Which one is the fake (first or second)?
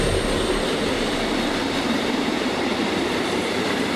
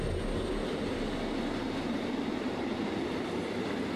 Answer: first